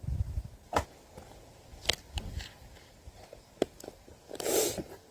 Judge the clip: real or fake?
real